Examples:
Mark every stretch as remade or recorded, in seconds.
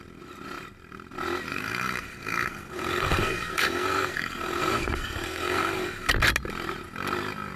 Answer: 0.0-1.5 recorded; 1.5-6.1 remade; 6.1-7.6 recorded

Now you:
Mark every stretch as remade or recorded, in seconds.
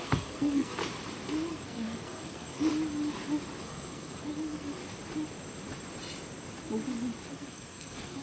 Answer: 0.0-0.8 remade; 0.8-1.5 recorded; 1.5-2.7 remade; 2.7-3.6 recorded; 3.6-4.8 remade; 4.8-7.3 recorded; 7.3-8.2 remade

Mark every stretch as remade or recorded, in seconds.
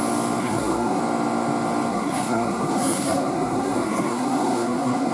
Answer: 0.0-0.4 recorded; 0.4-1.0 remade; 1.0-1.9 recorded; 1.9-5.1 remade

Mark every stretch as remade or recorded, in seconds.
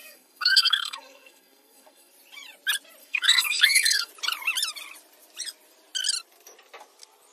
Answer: 0.0-2.1 remade; 2.1-3.0 recorded; 3.0-4.1 remade; 4.1-7.3 recorded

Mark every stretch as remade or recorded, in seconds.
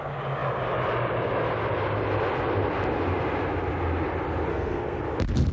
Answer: 0.0-4.5 recorded; 4.5-5.0 remade; 5.0-5.5 recorded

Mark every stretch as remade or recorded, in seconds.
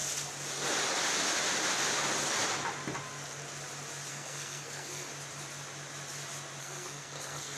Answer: 0.0-4.1 recorded; 4.1-5.1 remade; 5.1-6.6 recorded; 6.6-7.6 remade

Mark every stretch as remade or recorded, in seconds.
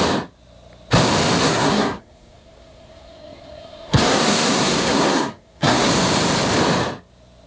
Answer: 0.0-1.4 recorded; 1.4-5.9 remade; 5.9-7.5 recorded